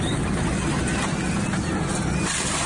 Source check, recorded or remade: recorded